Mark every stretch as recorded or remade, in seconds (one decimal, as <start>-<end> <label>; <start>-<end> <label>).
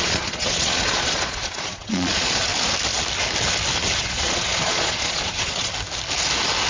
0.0-2.5 remade; 2.5-4.0 recorded; 4.0-5.7 remade; 5.7-6.7 recorded